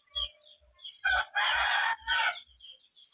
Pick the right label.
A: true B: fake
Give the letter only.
A